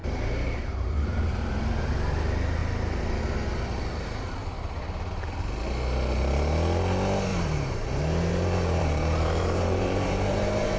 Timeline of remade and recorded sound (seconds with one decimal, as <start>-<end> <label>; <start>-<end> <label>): 0.0-1.9 remade; 1.9-7.3 recorded; 7.3-10.8 remade